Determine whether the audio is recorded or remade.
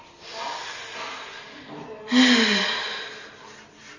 recorded